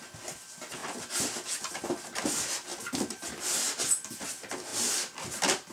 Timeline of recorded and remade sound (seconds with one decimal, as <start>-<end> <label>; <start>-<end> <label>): 0.0-5.7 recorded